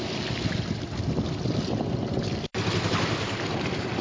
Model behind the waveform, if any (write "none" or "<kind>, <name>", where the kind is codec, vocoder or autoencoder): none